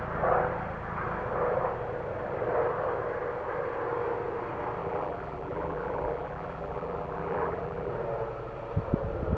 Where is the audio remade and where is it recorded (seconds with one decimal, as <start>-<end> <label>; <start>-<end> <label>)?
0.0-4.8 recorded; 4.8-7.9 remade; 7.9-9.4 recorded